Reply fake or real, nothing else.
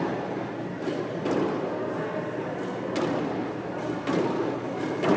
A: real